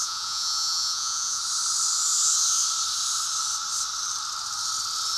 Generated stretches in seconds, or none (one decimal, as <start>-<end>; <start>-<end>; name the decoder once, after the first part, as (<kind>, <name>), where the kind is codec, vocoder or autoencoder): 0.0-1.4 (vocoder, Vocos)